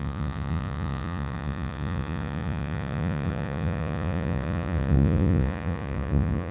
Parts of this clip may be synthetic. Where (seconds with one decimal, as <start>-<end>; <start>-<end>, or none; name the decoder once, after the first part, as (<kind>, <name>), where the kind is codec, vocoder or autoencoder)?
0.0-6.5 (vocoder, Vocos)